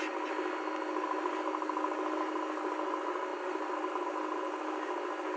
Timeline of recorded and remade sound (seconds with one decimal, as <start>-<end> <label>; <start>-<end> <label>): 0.0-5.4 recorded